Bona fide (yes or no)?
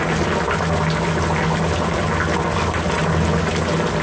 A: yes